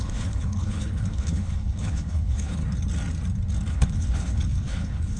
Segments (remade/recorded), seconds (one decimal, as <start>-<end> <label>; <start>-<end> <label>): 0.0-2.6 remade; 2.6-3.7 recorded; 3.7-5.2 remade